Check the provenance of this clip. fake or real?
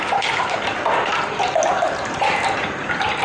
real